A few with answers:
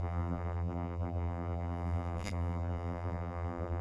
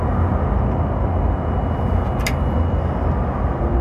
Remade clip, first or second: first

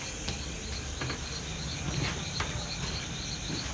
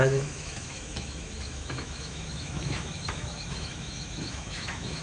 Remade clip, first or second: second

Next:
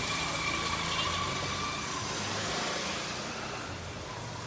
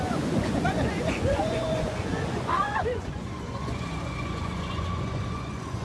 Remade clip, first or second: second